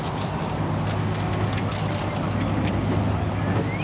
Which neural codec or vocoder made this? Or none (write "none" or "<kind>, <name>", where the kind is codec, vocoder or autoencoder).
none